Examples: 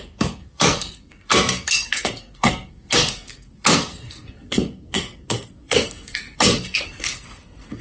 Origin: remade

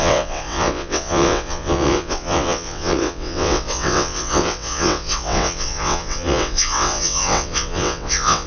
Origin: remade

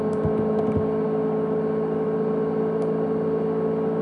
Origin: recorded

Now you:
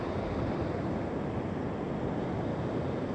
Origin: recorded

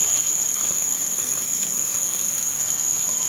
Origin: remade